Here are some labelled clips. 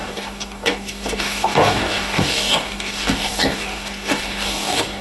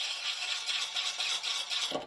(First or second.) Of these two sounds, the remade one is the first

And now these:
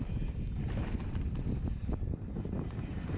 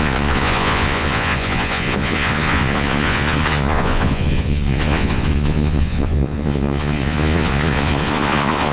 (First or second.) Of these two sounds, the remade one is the second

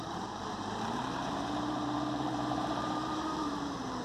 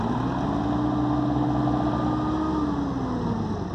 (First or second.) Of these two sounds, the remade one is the first